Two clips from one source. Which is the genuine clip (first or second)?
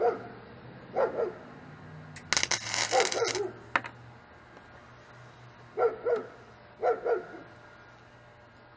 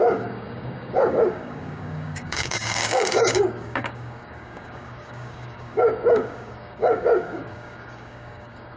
first